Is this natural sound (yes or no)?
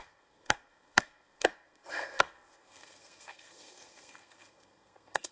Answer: no